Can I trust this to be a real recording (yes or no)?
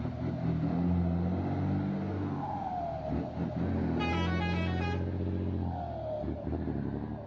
yes